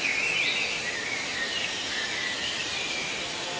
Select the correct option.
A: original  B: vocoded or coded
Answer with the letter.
A